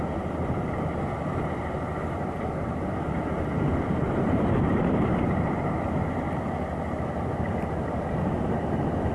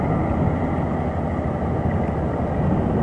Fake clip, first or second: first